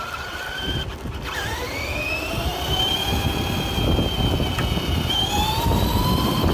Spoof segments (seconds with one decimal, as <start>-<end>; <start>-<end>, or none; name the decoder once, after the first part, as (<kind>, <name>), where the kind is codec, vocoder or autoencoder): 0.0-2.5 (vocoder, BigVGAN v2)

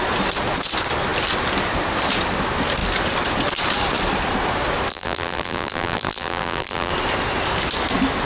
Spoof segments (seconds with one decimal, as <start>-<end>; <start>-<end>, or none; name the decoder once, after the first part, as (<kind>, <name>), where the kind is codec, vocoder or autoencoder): 4.9-6.9 (vocoder, BigVGAN v2)

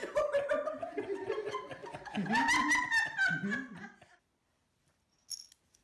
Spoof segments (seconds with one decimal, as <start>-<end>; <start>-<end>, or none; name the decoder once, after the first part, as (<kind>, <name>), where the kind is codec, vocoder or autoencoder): none

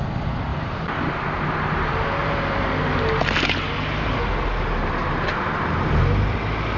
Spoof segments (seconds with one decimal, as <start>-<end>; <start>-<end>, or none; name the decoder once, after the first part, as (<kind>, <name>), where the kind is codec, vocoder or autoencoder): 0.5-1.1 (vocoder, BigVGAN v2); 2.2-2.7; 5.0-5.8

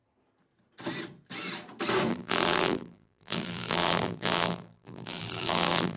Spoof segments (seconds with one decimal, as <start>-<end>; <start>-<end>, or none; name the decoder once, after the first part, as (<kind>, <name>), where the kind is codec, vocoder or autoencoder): 2.1-6.0 (vocoder, BigVGAN v2)